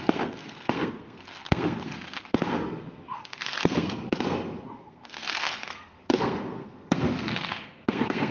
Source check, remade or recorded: remade